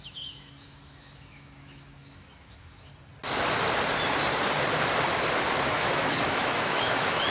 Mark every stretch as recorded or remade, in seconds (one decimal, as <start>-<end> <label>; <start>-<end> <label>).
0.0-2.9 remade; 2.9-5.6 recorded; 5.6-7.3 remade